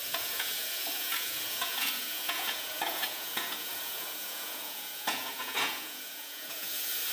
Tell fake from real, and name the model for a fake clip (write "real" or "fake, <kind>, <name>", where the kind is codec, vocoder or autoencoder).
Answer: fake, vocoder, Vocos